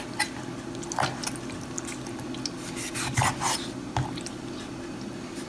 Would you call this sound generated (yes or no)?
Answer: no